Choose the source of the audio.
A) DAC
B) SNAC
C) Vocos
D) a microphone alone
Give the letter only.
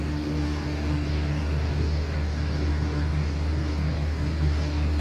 A